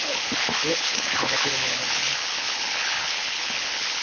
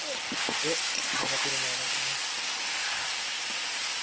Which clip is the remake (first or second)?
first